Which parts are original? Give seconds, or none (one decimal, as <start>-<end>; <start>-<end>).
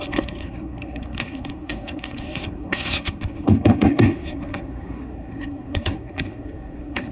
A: none